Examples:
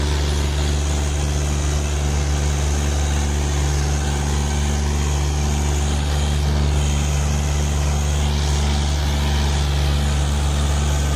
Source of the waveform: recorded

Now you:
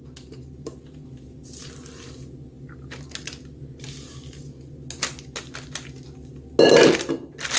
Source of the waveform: recorded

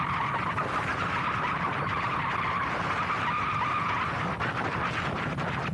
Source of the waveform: recorded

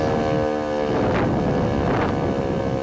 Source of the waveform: recorded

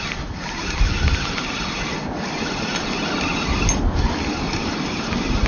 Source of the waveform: recorded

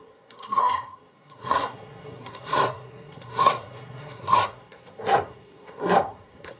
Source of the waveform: remade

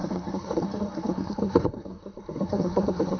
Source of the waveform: remade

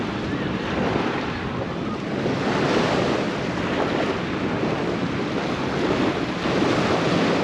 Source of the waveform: recorded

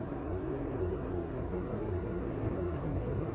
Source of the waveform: remade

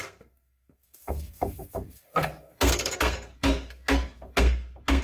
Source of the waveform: remade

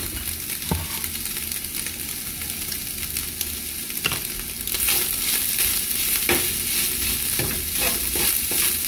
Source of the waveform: recorded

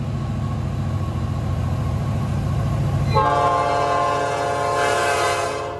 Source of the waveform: recorded